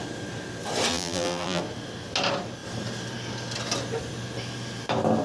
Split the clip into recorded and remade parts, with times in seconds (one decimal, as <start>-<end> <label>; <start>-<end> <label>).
0.0-0.9 recorded; 0.9-1.6 remade; 1.6-5.2 recorded